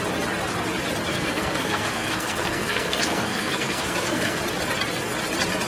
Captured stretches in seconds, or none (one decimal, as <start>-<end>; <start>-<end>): 0.0-1.1; 4.4-5.7